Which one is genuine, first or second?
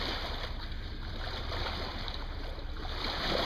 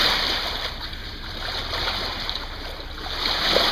second